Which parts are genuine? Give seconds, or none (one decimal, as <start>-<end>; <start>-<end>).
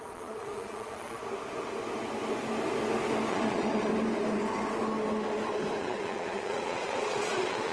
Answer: 1.2-3.3; 3.9-5.8